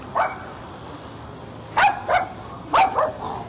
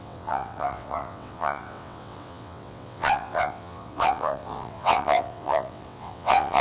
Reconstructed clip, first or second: second